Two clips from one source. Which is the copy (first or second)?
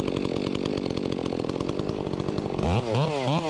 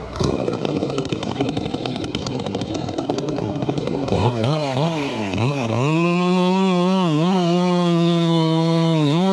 second